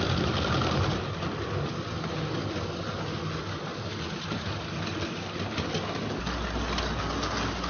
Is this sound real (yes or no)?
yes